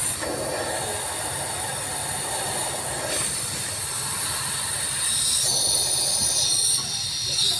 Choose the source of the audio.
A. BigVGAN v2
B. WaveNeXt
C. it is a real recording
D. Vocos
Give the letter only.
C